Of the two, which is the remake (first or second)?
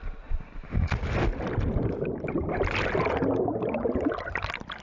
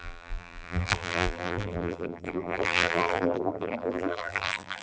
second